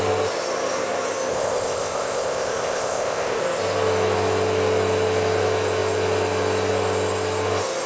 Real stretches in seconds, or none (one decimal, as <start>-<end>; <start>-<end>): 0.0-1.3; 3.4-7.9